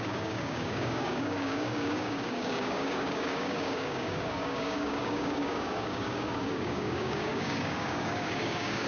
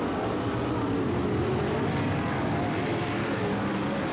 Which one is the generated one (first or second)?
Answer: first